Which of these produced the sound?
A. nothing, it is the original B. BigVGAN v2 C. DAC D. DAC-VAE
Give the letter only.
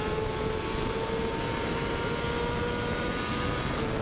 A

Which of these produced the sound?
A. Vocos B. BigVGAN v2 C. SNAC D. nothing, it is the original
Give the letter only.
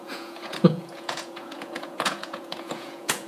A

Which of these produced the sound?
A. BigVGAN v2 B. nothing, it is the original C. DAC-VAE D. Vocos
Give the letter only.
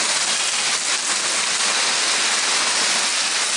B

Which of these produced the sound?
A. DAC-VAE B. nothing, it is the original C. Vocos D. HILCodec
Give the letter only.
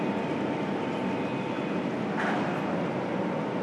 B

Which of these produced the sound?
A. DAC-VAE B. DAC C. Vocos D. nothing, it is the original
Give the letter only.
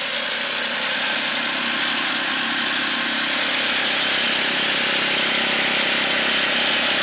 D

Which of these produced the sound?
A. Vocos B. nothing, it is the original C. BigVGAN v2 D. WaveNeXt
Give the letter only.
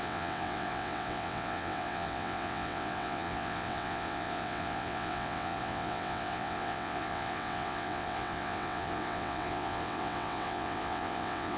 D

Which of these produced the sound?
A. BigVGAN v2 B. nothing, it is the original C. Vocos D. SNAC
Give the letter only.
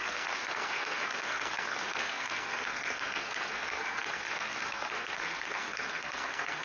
D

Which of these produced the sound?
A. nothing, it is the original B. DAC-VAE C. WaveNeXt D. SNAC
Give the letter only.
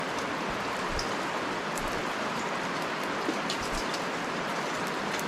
A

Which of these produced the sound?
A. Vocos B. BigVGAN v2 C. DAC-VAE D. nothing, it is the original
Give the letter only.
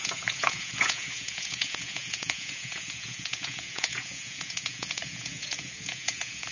A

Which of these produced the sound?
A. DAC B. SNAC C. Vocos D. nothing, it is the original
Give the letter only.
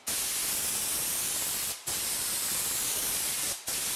D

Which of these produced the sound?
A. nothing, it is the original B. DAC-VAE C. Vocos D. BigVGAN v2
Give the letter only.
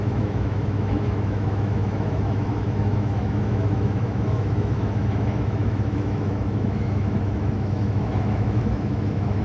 B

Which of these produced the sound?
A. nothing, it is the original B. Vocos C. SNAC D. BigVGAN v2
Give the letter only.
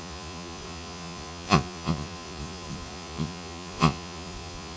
B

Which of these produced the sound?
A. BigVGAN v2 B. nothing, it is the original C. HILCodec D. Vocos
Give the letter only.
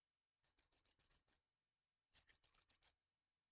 C